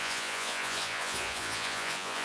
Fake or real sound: fake